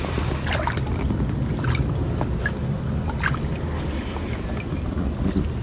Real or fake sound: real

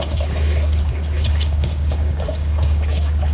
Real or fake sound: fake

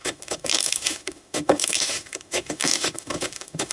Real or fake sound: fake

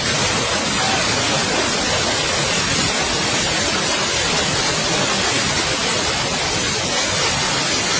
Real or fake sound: real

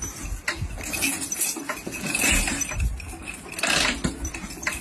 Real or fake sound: real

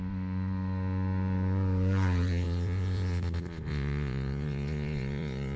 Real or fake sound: fake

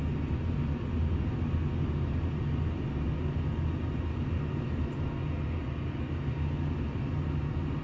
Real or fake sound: real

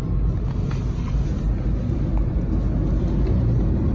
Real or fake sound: real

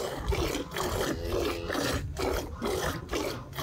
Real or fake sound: real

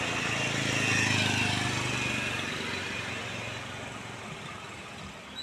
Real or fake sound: real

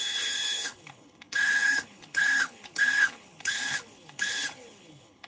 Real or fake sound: fake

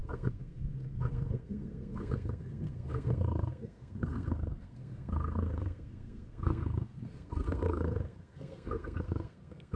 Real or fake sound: fake